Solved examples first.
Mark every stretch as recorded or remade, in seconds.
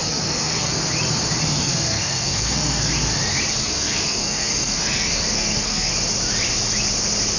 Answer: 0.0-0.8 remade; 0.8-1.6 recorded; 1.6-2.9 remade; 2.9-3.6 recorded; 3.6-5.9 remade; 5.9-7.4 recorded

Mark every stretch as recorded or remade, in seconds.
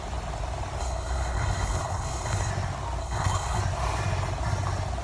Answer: 0.0-0.8 recorded; 0.8-2.5 remade; 2.5-3.0 recorded; 3.0-3.6 remade; 3.6-5.0 recorded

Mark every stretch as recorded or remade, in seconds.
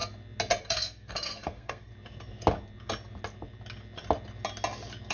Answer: 0.0-0.6 recorded; 0.6-1.9 remade; 1.9-5.1 recorded